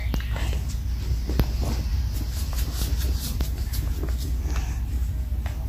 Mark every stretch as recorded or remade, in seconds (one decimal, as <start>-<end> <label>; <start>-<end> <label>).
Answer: 0.0-1.9 recorded; 1.9-3.9 remade; 3.9-5.7 recorded